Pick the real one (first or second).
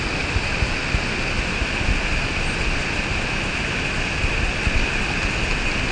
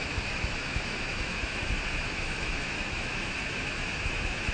first